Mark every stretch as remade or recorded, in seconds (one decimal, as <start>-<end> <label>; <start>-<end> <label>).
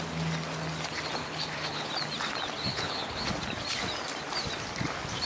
0.0-1.2 recorded; 1.2-1.9 remade; 1.9-2.7 recorded; 2.7-3.3 remade; 3.3-5.2 recorded